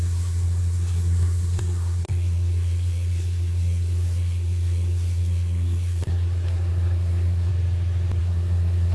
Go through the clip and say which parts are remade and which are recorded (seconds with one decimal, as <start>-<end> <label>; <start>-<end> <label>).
0.0-7.5 remade; 7.5-8.2 recorded; 8.2-8.9 remade